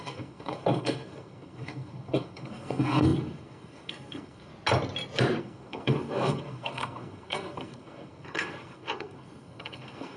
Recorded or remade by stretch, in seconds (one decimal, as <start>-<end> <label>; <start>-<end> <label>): 0.0-4.5 remade; 4.5-5.4 recorded; 5.4-10.2 remade